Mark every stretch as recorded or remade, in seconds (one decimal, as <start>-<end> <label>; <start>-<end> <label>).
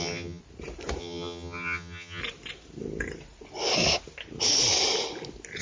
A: 0.0-0.4 remade; 0.4-1.0 recorded; 1.0-2.2 remade; 2.2-5.6 recorded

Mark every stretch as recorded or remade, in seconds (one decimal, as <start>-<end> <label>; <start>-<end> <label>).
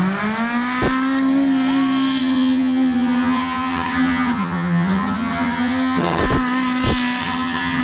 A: 0.0-2.2 recorded; 2.2-6.2 remade; 6.2-7.2 recorded; 7.2-7.8 remade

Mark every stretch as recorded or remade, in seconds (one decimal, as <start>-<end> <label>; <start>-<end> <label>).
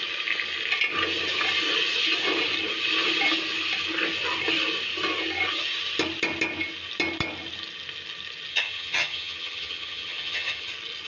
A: 0.0-8.5 recorded; 8.5-10.7 remade; 10.7-11.1 recorded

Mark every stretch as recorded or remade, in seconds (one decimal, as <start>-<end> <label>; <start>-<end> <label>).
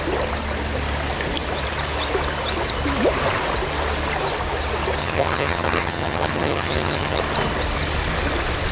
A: 0.0-5.0 recorded; 5.0-7.2 remade; 7.2-8.7 recorded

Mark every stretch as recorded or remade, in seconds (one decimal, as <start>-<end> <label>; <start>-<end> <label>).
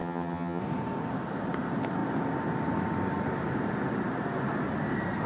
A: 0.0-0.6 remade; 0.6-5.3 recorded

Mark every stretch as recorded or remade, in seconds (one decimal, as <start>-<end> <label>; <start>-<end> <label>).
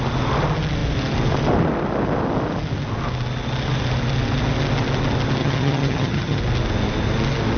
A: 0.0-5.4 recorded; 5.4-6.4 remade; 6.4-7.6 recorded